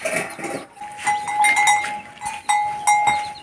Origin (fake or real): real